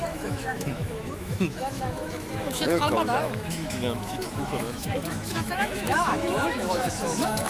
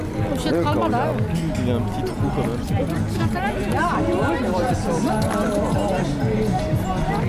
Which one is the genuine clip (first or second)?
second